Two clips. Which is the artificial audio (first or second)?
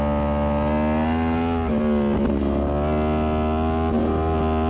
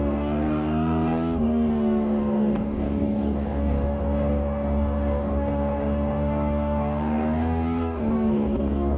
second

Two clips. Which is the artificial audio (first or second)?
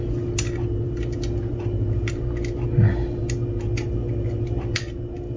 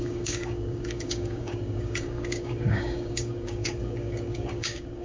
second